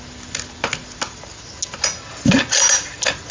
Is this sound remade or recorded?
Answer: recorded